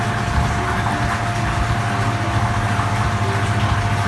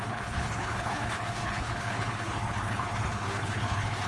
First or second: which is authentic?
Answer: first